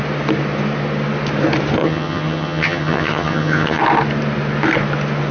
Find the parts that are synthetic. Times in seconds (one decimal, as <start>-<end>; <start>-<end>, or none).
1.8-3.8